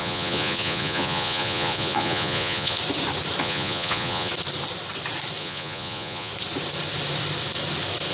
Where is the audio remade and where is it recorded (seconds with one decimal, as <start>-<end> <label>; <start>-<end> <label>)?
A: 0.0-2.8 remade; 2.8-3.4 recorded; 3.4-4.3 remade; 4.3-5.4 recorded; 5.4-6.3 remade; 6.3-8.1 recorded